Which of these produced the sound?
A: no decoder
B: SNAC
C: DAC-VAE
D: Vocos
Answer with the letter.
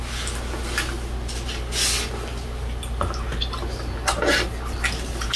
A